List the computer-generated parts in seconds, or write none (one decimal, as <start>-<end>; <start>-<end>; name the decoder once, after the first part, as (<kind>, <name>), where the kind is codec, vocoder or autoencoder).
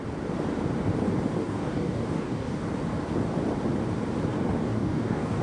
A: 1.4-2.6 (codec, DAC); 4.6-5.4